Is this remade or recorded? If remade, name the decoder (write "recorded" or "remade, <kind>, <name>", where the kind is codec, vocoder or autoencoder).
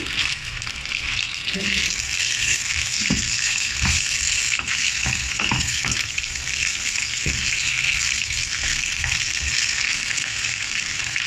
remade, codec, SNAC